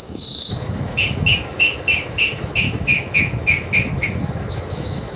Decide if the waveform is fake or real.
fake